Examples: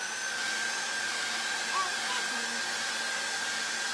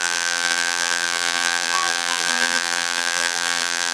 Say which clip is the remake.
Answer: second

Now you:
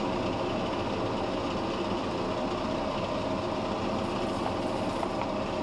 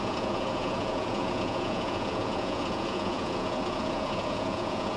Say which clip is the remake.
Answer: second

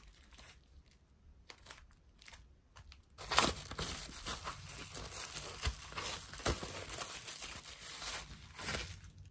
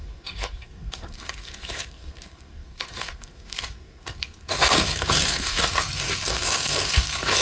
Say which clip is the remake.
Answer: second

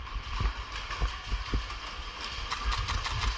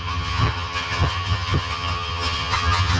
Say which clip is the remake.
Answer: second